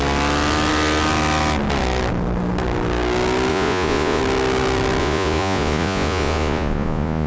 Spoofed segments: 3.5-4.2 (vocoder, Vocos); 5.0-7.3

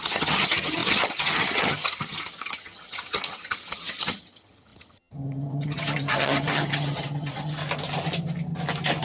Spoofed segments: 0.0-7.6 (vocoder, HiFi-GAN)

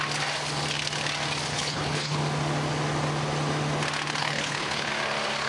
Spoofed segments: 1.5-2.2 (codec, HILCodec); 4.2-4.9